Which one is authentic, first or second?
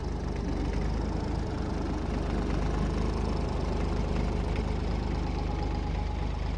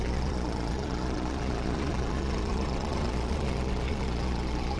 first